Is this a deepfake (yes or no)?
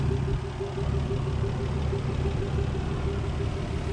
no